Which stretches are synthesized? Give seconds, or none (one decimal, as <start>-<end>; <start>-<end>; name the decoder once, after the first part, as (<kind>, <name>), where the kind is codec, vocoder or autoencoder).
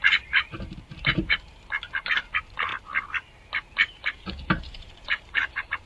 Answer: 0.0-2.7 (vocoder, BigVGAN v2); 4.6-5.9